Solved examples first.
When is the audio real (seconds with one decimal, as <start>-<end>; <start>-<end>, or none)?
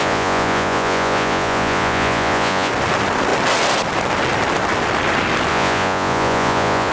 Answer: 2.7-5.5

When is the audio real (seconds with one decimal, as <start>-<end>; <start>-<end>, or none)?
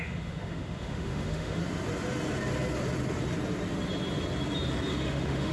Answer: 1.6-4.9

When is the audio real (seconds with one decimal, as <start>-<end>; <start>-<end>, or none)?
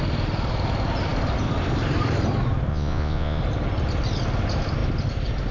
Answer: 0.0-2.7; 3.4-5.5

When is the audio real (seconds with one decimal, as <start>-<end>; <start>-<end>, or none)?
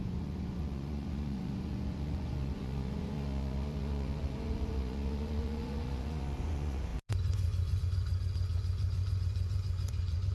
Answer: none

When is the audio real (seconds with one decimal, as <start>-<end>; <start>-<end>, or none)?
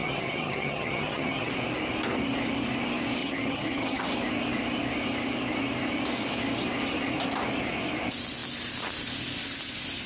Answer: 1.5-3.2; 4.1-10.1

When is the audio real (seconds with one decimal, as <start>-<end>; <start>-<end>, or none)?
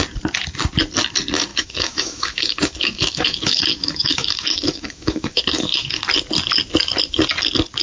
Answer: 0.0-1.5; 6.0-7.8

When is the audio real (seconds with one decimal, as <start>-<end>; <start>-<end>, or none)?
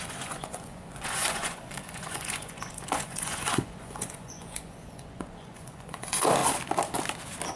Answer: 6.4-7.6